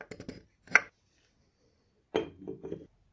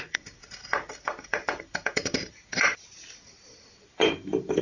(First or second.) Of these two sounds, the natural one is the first